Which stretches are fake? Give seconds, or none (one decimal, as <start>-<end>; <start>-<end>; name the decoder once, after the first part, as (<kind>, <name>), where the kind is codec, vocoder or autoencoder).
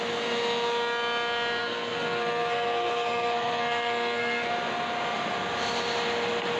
1.6-4.5 (codec, SNAC)